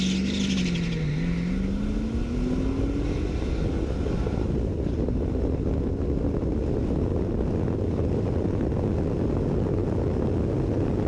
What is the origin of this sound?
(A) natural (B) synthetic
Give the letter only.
A